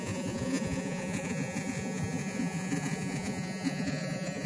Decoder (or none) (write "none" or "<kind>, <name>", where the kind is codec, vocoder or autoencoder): vocoder, Vocos